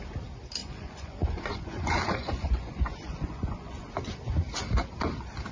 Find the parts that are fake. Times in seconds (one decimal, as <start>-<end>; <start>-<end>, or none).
0.6-3.9